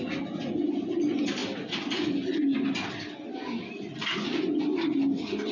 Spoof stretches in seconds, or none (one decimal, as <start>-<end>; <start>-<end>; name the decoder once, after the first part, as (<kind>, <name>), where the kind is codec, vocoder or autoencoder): none